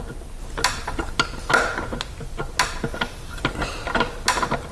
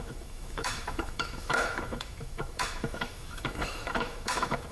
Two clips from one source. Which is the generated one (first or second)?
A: second